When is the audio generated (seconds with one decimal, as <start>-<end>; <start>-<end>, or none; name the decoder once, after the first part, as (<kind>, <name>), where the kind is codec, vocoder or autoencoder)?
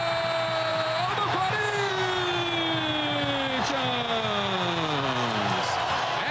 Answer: 0.7-1.9 (vocoder, BigVGAN v2)